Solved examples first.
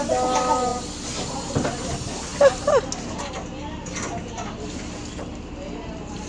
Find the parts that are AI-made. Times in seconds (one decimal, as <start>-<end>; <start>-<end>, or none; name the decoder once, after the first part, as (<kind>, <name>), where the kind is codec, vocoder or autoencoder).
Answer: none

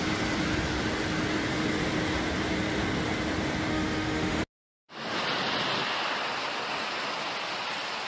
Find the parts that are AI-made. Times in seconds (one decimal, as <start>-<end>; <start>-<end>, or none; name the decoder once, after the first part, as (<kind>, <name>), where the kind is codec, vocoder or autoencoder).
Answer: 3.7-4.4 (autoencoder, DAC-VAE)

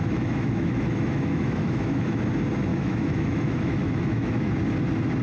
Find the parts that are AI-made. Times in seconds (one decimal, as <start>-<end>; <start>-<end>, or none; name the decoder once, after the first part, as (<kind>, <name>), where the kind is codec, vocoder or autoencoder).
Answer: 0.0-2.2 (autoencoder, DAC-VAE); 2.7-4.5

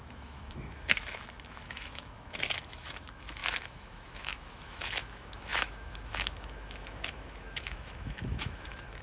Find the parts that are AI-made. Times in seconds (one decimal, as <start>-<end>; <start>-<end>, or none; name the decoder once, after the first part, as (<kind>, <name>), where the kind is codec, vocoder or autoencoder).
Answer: 0.0-9.0 (autoencoder, DAC-VAE)